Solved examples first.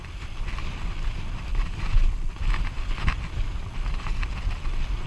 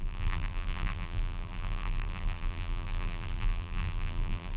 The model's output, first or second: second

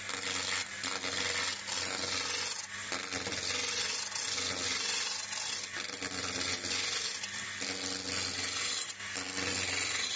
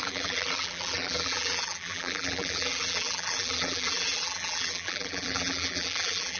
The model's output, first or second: second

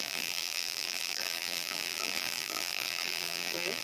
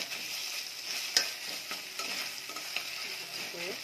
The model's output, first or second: first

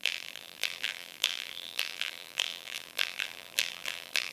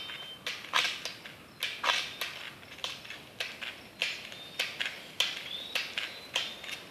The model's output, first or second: first